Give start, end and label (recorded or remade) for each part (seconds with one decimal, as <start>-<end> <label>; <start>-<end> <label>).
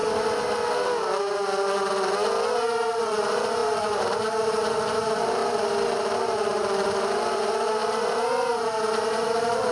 0.0-3.0 recorded; 3.0-5.4 remade; 5.4-6.2 recorded; 6.2-9.7 remade